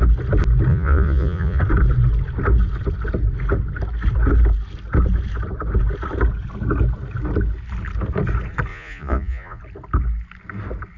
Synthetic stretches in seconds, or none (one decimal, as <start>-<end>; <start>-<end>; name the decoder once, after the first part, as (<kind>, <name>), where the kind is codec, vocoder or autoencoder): 0.7-1.6 (vocoder, Vocos); 8.7-9.6